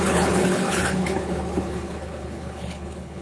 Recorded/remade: remade